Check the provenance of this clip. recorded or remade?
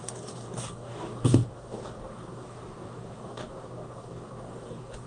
remade